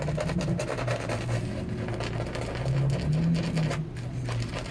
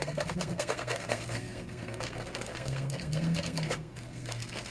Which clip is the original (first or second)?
first